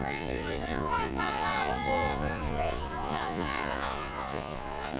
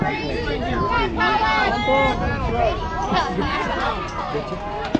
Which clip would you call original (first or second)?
second